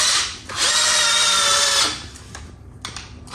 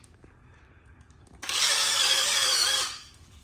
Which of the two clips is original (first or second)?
first